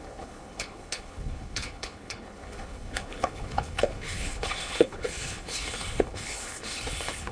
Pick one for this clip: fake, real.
fake